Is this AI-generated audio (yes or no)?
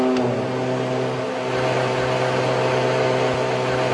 no